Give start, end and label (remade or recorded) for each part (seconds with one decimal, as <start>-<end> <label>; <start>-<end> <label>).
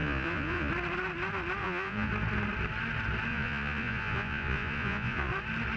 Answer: 0.0-0.7 remade; 0.7-1.6 recorded; 1.6-2.1 remade; 2.1-3.3 recorded; 3.3-5.3 remade; 5.3-5.8 recorded